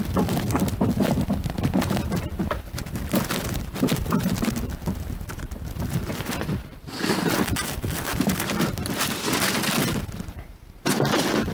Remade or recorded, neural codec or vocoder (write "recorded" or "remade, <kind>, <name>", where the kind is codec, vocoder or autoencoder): remade, vocoder, BigVGAN v2